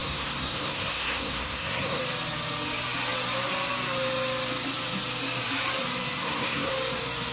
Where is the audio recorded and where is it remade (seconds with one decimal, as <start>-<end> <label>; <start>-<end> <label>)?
0.0-2.0 remade; 2.0-6.2 recorded; 6.2-6.7 remade; 6.7-7.3 recorded